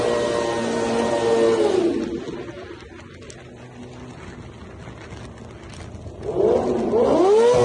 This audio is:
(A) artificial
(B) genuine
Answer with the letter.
B